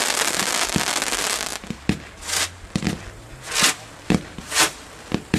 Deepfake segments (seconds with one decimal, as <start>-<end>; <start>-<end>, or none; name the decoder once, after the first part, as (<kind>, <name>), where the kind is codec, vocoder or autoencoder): 0.0-1.5 (vocoder, BigVGAN v2); 3.3-5.4